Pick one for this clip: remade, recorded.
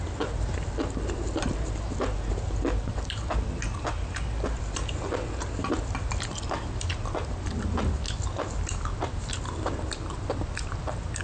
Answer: recorded